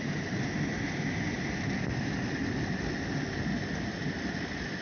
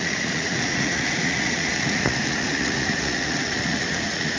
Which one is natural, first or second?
first